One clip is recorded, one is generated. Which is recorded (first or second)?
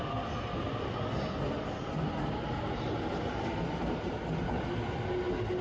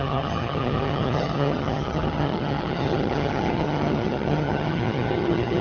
first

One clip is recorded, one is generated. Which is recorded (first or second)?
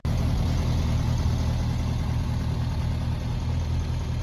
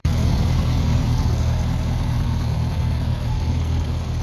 first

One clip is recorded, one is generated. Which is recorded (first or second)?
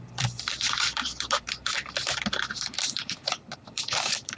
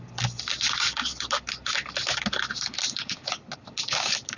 second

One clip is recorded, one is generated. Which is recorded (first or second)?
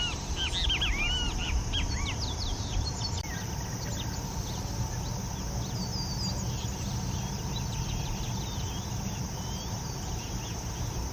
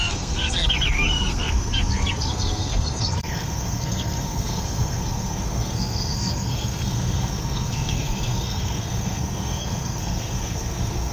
first